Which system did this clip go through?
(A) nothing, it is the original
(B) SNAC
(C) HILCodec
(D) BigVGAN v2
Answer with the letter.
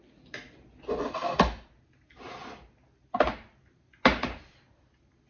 A